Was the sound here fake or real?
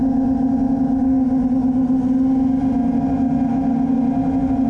real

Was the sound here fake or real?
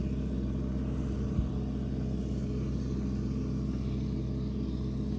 real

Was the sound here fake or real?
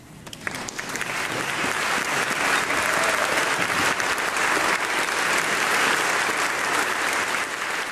real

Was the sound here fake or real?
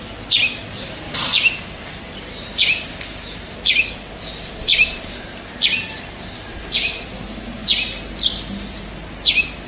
real